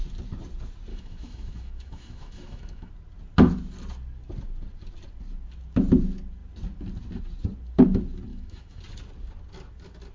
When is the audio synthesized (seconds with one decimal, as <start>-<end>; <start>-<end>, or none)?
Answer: 0.9-2.9; 8.3-8.8